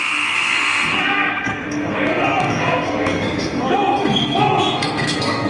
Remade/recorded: remade